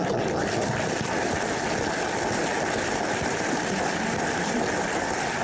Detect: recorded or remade recorded